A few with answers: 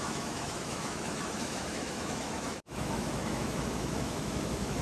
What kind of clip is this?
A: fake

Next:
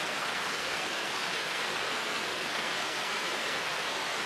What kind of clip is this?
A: fake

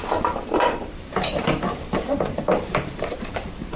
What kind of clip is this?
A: fake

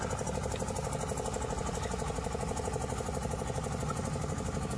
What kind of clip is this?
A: real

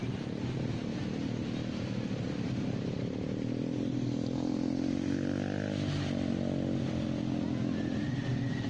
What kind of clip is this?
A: real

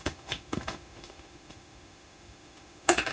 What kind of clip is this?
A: fake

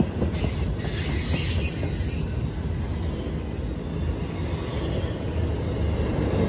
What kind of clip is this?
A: real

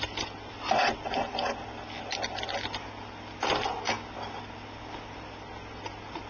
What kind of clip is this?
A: real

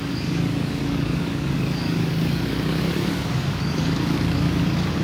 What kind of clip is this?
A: fake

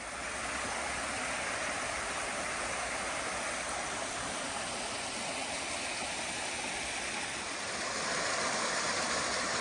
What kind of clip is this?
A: real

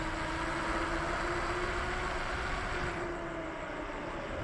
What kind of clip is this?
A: real